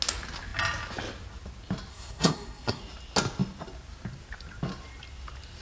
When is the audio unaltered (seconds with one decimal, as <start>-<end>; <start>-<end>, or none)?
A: 0.0-1.9; 2.8-5.6